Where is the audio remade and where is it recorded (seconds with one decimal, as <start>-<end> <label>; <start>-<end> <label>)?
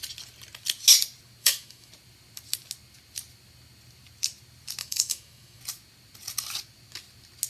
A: 0.0-1.4 recorded; 1.4-1.9 remade; 1.9-4.8 recorded; 4.8-5.6 remade; 5.6-7.5 recorded